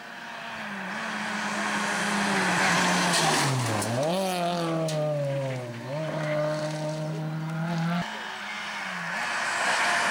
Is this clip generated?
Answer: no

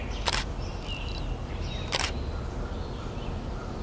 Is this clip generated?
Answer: no